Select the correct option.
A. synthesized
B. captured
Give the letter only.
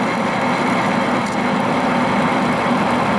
B